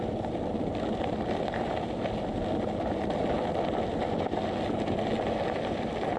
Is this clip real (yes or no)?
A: yes